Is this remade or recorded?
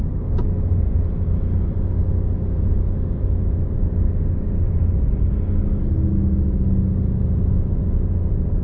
recorded